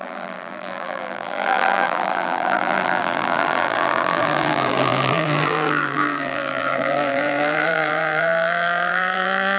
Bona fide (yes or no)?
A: no